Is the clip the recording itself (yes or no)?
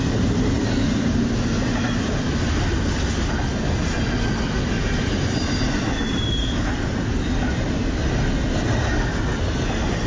yes